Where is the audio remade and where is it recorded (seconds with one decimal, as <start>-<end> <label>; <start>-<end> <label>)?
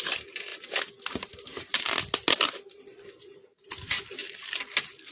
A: 0.0-5.1 recorded